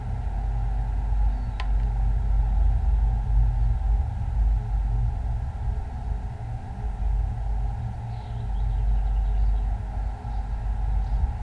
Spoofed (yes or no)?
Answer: no